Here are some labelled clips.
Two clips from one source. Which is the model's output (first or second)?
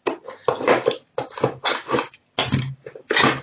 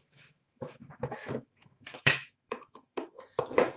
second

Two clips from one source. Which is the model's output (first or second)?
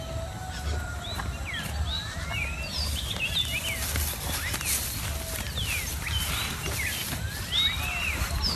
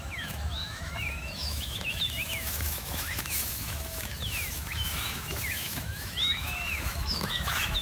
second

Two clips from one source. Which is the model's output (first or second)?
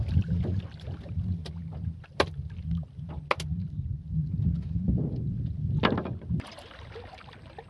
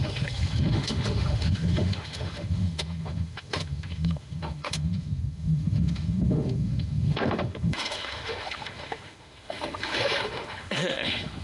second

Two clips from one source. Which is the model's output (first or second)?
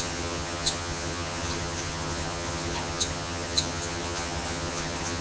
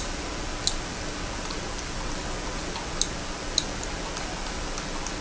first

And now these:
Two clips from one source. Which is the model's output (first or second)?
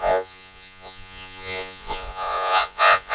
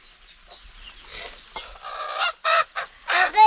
first